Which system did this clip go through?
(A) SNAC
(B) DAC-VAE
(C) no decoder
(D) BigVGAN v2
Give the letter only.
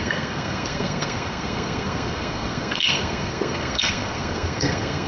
A